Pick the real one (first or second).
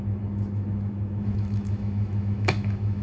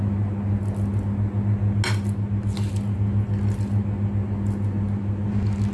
second